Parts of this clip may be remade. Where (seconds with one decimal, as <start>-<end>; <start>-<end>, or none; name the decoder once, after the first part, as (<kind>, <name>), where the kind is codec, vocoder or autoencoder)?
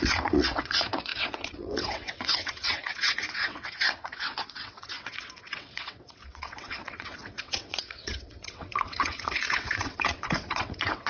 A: 0.0-11.1 (vocoder, WaveNeXt)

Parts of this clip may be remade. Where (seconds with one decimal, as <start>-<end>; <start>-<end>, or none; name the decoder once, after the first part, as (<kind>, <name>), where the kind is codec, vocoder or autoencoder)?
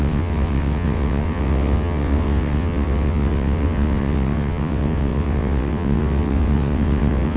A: 0.0-7.4 (vocoder, WaveNeXt)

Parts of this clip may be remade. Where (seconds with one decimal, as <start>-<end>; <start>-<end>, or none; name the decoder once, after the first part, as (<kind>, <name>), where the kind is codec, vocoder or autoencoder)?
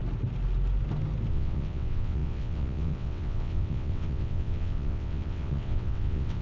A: 1.3-6.4 (vocoder, WaveNeXt)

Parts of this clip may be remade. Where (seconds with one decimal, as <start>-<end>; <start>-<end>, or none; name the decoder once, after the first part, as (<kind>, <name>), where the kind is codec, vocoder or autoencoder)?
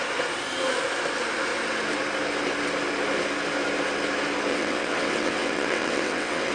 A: 4.5-6.5 (vocoder, WaveNeXt)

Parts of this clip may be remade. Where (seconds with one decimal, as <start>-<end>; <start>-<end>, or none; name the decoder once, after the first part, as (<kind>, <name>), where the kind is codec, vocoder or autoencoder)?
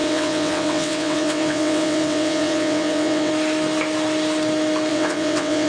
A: 0.0-3.3 (vocoder, WaveNeXt); 4.9-5.7